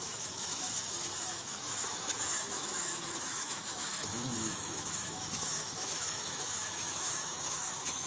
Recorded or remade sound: remade